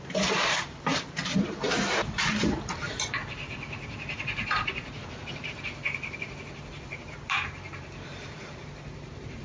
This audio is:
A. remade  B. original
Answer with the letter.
A